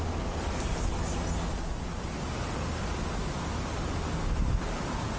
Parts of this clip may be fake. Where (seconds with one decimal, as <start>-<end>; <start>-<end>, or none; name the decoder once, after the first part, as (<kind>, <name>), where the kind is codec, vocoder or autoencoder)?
3.2-5.2 (vocoder, BigVGAN v2)